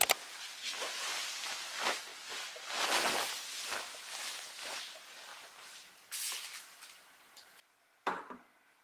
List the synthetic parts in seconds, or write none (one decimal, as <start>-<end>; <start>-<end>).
none